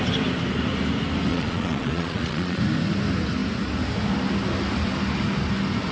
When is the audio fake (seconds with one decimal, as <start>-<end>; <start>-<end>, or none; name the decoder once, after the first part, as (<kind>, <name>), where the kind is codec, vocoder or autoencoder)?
1.3-2.6 (vocoder, Vocos)